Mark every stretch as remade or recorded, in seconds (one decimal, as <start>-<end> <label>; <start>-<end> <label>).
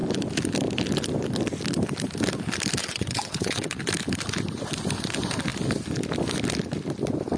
0.0-2.8 recorded; 2.8-3.9 remade; 3.9-7.4 recorded